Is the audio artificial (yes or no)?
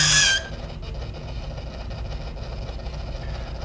no